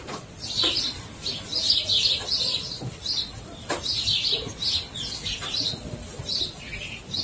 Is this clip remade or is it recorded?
remade